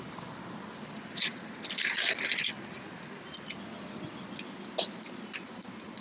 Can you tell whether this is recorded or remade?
recorded